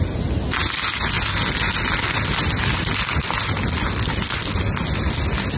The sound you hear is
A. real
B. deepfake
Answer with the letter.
A